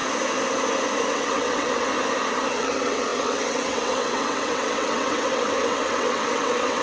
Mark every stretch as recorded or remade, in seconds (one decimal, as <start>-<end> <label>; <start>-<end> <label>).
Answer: 0.0-1.1 recorded; 1.1-1.9 remade; 1.9-2.5 recorded; 2.5-6.8 remade